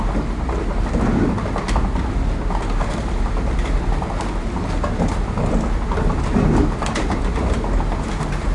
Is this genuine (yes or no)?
yes